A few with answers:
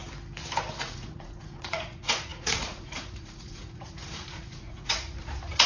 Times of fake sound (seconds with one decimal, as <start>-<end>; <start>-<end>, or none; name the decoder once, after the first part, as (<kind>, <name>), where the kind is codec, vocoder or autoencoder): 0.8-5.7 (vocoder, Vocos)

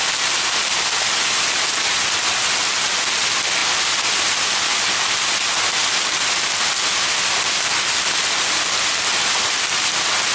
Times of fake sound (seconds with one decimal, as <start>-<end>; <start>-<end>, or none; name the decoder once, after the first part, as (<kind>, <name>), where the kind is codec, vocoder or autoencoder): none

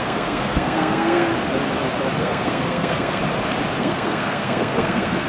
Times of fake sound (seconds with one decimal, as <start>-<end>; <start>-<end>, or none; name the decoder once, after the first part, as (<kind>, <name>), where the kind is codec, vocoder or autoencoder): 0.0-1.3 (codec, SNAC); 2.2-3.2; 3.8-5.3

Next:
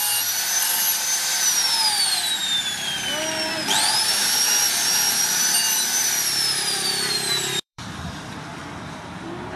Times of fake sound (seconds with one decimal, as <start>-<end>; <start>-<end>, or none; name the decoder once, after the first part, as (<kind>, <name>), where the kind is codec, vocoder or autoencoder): 4.2-8.5 (vocoder, BigVGAN v2)

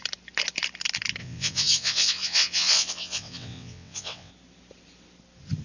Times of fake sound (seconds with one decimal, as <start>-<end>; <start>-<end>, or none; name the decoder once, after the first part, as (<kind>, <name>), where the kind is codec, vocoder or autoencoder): 1.2-4.3 (vocoder, WaveNeXt)

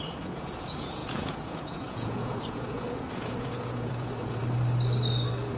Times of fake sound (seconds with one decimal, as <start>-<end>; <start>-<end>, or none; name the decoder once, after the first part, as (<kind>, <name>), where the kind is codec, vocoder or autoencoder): 0.0-4.4 (vocoder, Vocos)